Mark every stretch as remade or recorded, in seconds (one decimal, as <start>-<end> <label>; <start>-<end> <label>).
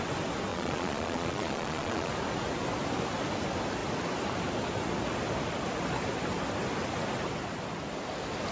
0.0-0.5 recorded; 0.5-2.1 remade; 2.1-8.5 recorded